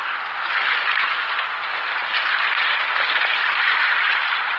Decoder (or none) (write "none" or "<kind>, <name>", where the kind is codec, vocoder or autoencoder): none